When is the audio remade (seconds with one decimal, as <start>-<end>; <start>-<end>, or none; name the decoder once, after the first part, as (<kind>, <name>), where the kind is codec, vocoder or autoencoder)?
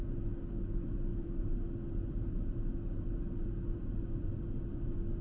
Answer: none